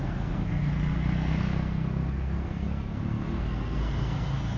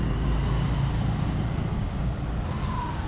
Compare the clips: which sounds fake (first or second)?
first